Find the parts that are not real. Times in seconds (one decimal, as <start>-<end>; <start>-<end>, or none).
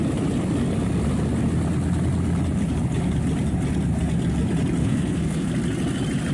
4.8-5.5